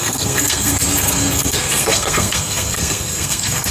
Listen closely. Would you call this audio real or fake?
fake